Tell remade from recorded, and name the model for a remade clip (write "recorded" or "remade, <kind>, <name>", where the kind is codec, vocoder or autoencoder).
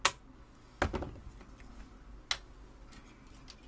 recorded